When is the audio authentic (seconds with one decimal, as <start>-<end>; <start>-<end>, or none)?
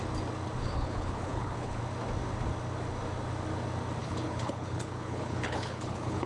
0.0-0.6; 1.8-4.0